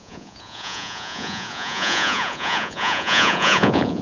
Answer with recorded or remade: remade